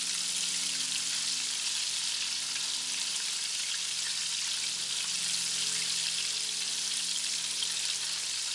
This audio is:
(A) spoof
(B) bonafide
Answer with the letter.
B